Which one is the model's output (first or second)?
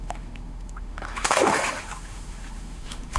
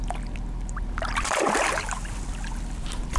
first